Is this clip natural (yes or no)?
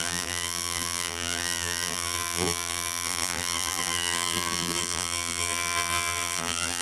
no